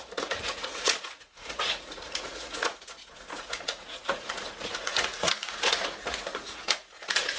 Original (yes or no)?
no